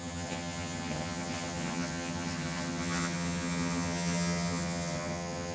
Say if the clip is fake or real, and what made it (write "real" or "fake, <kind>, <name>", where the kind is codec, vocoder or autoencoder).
fake, vocoder, HiFi-GAN